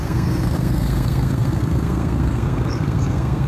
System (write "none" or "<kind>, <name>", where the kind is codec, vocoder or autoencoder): codec, SNAC